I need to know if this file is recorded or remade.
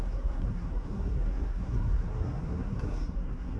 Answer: remade